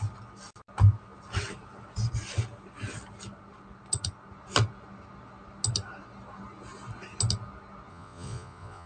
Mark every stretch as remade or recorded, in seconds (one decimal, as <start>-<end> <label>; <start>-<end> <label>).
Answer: 0.0-7.9 recorded; 7.9-8.9 remade